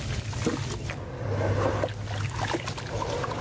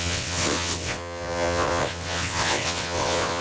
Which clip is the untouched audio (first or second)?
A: first